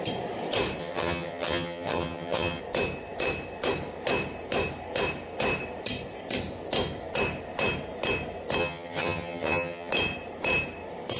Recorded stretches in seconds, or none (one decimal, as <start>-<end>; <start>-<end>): 0.0-0.8; 2.6-8.6; 9.9-11.2

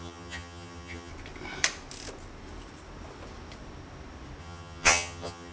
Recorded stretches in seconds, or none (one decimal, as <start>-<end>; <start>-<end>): 1.1-4.4

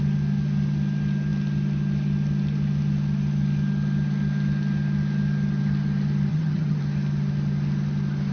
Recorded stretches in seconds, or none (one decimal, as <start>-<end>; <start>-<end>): 0.0-6.3; 6.8-8.3